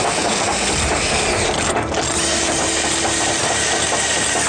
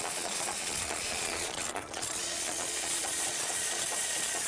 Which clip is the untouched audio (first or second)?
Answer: first